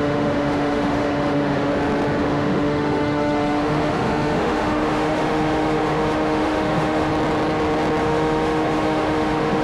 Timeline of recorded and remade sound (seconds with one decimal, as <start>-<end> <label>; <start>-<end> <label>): 0.0-1.7 remade; 1.7-2.2 recorded; 2.2-7.1 remade; 7.1-8.0 recorded; 8.0-9.6 remade